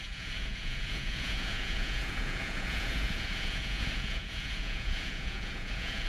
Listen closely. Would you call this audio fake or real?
fake